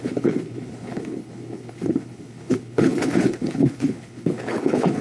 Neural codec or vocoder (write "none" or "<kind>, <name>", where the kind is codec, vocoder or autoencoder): codec, HILCodec